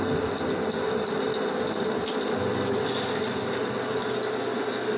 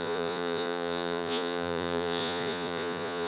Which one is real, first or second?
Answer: first